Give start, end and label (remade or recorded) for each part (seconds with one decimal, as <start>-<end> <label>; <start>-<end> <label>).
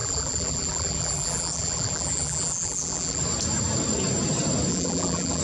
0.0-3.2 remade; 3.2-4.7 recorded; 4.7-5.4 remade